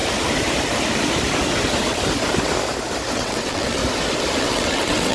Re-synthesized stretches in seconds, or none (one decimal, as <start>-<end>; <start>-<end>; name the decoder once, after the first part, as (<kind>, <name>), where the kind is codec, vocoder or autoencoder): 3.1-3.8 (vocoder, WaveNeXt); 4.4-5.1